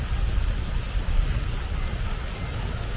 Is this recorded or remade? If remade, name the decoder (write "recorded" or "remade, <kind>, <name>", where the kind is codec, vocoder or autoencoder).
recorded